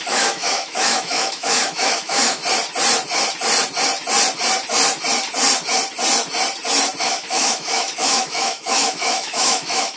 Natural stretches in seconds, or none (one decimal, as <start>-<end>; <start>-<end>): 2.4-7.0